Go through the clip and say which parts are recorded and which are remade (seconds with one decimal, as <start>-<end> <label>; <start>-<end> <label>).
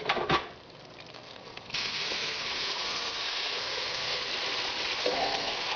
0.0-0.4 remade; 0.4-1.1 recorded; 1.1-4.2 remade; 4.2-5.0 recorded; 5.0-5.8 remade